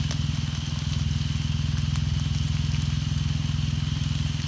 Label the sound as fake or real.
real